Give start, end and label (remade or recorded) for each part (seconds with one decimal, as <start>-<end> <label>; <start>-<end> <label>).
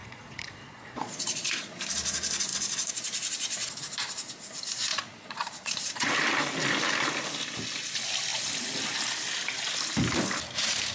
0.0-1.8 remade; 1.8-4.9 recorded; 4.9-6.1 remade; 6.1-10.9 recorded